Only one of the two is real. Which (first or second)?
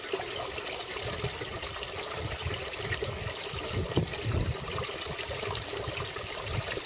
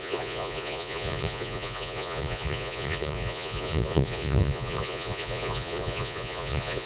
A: first